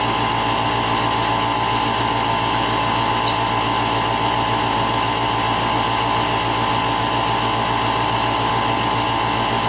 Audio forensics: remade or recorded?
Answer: recorded